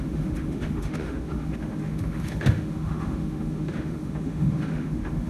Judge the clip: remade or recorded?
remade